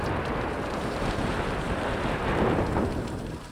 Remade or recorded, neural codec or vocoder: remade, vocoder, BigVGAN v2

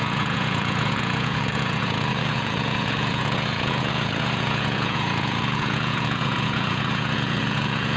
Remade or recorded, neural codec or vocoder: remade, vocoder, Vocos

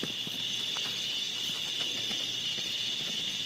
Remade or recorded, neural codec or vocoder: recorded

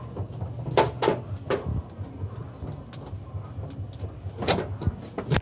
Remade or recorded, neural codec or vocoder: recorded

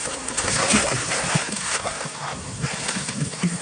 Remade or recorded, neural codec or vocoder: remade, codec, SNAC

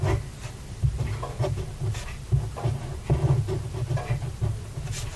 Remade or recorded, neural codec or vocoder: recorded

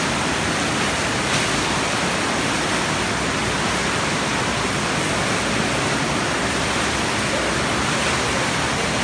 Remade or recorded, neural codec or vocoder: recorded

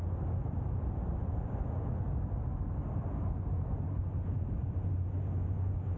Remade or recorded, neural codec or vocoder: recorded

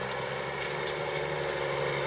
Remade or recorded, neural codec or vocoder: recorded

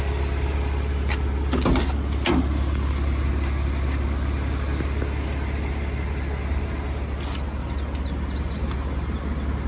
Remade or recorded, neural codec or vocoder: recorded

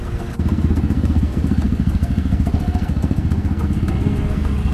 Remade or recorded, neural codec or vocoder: remade, codec, SNAC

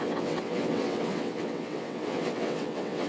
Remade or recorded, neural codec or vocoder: remade, vocoder, WaveNeXt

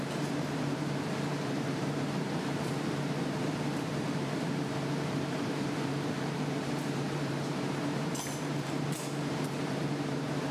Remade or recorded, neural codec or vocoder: remade, vocoder, BigVGAN v2